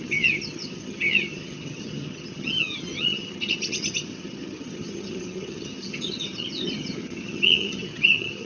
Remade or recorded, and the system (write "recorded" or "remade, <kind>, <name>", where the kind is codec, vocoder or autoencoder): remade, vocoder, HiFi-GAN